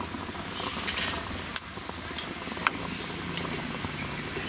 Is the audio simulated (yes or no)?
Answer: no